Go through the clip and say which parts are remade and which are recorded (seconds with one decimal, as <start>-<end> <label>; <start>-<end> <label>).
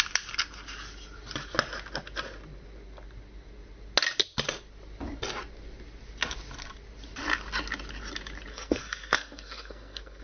0.0-8.5 recorded; 8.5-10.2 remade